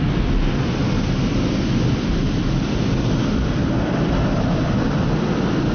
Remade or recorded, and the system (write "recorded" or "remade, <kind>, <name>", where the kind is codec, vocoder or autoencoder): recorded